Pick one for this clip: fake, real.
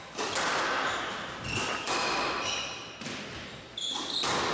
real